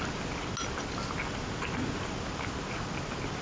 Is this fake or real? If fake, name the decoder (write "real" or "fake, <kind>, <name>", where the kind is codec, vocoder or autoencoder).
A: real